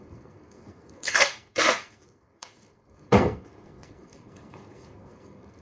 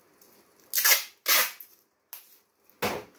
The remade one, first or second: first